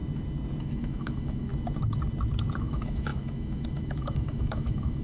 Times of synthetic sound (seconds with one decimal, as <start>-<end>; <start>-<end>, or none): 0.6-1.5; 2.6-5.0